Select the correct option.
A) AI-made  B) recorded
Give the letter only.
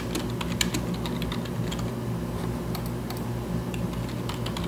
B